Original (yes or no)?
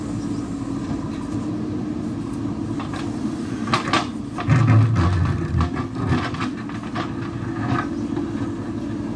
yes